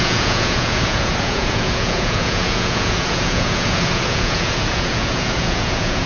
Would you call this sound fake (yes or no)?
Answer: yes